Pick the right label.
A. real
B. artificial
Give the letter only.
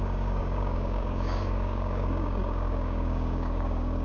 B